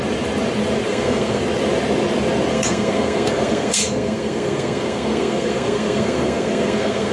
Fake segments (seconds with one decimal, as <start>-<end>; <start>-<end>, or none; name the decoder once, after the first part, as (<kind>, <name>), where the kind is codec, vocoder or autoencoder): 0.9-1.4 (codec, SNAC); 2.5-7.1